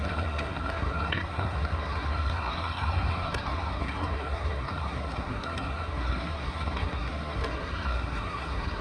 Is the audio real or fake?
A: fake